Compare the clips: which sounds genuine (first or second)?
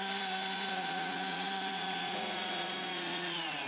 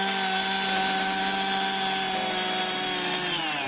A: second